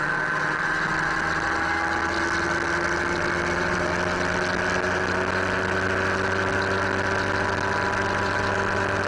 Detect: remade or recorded recorded